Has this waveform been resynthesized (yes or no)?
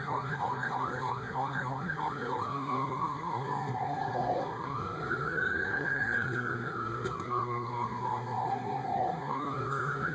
yes